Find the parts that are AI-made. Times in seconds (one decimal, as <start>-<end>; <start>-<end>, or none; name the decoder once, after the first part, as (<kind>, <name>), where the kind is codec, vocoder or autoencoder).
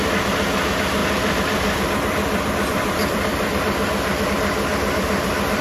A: 1.0-4.3 (vocoder, BigVGAN v2); 4.7-5.6